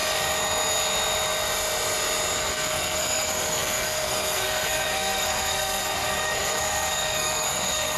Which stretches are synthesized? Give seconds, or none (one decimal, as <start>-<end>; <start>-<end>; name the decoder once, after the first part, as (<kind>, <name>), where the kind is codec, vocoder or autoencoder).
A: 2.4-8.0 (codec, SNAC)